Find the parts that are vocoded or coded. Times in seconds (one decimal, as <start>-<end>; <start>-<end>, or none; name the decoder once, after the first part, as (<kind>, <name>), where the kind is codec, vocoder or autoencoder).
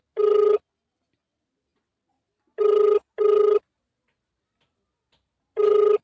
none